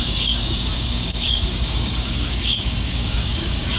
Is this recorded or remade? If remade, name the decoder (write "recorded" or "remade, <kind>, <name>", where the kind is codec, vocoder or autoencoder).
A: remade, codec, DAC